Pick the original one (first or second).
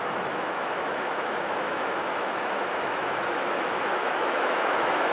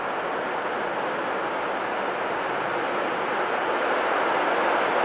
second